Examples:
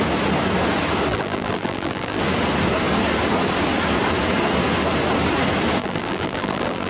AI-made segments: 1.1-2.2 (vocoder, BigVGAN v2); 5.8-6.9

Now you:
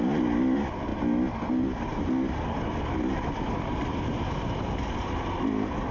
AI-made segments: none

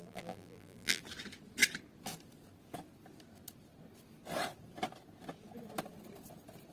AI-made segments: 0.0-1.0 (vocoder, BigVGAN v2)

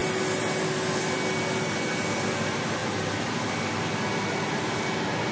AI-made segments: none

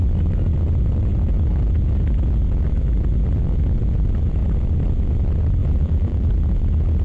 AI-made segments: 5.6-6.3 (vocoder, BigVGAN v2)

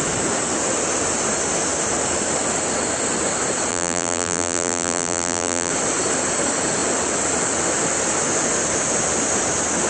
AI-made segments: 3.7-5.7 (vocoder, BigVGAN v2)

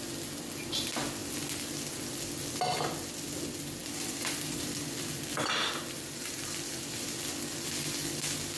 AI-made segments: 3.8-4.9 (vocoder, BigVGAN v2); 6.2-7.3

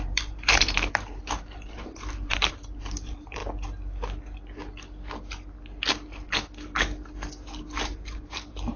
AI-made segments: 0.0-3.4 (vocoder, BigVGAN v2); 7.6-8.8